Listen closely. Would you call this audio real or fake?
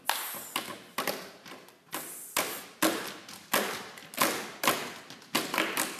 real